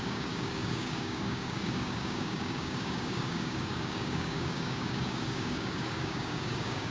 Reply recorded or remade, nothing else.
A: remade